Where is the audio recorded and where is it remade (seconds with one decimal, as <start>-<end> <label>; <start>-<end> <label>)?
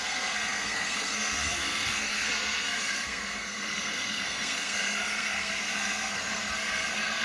0.0-7.2 remade